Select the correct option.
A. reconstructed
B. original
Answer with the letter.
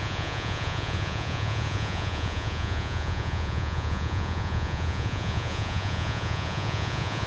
A